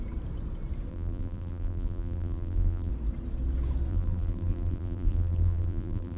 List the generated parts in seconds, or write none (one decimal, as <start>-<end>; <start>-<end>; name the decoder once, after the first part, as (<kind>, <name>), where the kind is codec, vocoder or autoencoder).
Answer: 0.9-2.9 (vocoder, BigVGAN v2); 3.9-6.2